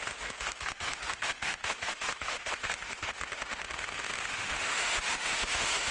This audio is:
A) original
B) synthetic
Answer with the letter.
B